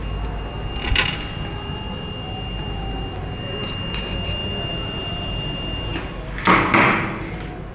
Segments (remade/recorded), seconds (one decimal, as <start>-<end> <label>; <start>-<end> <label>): 0.0-7.7 recorded